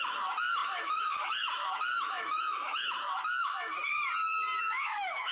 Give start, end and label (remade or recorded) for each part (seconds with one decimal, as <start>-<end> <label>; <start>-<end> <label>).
0.0-3.7 remade; 3.7-4.6 recorded; 4.6-5.3 remade